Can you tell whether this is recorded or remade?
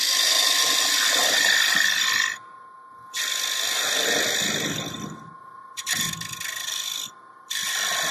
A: recorded